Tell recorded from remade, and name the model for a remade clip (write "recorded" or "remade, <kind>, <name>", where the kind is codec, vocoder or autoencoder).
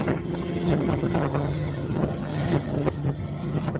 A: remade, vocoder, HiFi-GAN